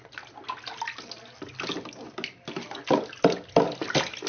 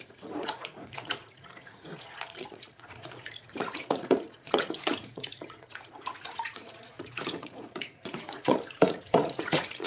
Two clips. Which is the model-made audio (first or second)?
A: second